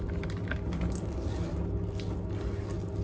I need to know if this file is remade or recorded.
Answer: recorded